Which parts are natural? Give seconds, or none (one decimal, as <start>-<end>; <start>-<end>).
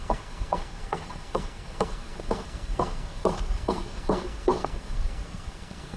none